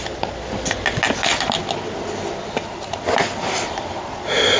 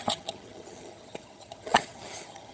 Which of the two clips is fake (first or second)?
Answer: second